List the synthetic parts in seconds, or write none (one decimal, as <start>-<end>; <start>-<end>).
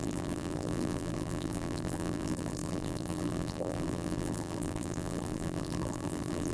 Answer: 0.0-6.5